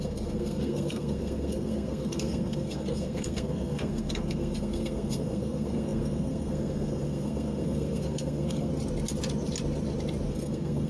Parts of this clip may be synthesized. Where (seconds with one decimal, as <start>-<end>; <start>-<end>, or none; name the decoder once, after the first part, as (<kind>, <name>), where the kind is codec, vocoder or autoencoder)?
0.0-8.7 (codec, SNAC); 10.3-10.9